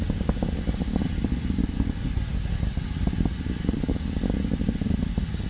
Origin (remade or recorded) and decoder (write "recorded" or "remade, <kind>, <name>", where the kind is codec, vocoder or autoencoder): recorded